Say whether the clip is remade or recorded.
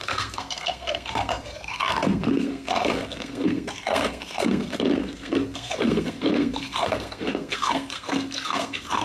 remade